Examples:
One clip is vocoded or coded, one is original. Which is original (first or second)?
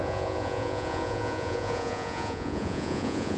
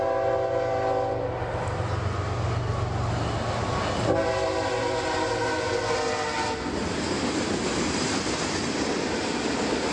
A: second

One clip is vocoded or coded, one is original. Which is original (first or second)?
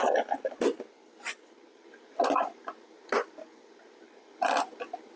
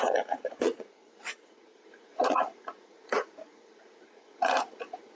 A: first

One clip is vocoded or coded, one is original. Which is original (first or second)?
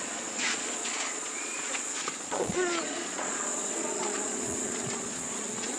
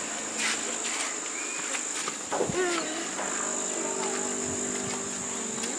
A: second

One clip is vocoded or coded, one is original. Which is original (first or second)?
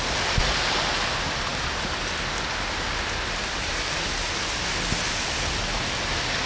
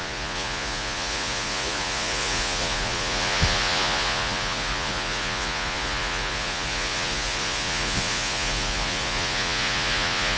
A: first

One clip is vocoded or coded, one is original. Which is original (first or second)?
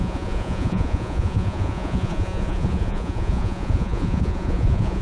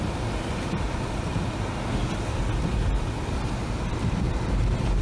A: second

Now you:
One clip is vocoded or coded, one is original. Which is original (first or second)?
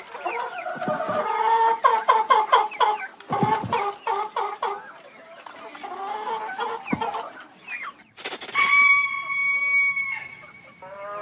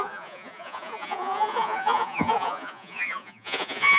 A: first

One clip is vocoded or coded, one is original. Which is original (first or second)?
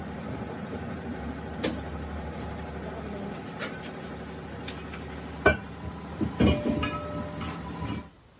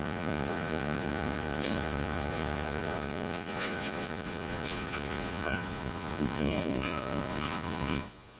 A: first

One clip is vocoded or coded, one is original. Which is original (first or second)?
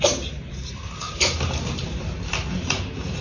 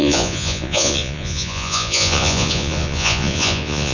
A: first